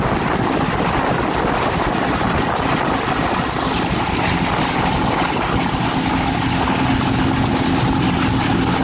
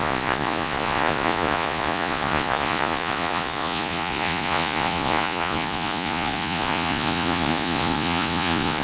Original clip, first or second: first